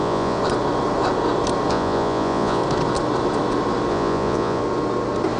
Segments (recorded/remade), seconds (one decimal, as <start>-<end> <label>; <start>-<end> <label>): 0.0-0.4 remade; 0.4-1.7 recorded; 1.7-2.6 remade; 2.6-3.9 recorded; 3.9-4.6 remade; 4.6-5.4 recorded